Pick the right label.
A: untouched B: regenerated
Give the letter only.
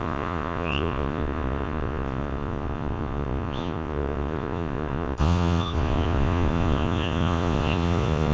B